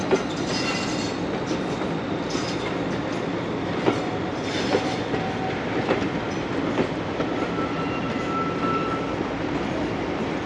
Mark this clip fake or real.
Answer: real